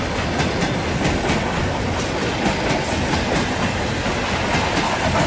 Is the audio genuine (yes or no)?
yes